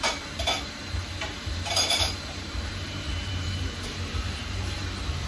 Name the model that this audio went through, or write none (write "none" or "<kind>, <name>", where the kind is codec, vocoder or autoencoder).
vocoder, BigVGAN v2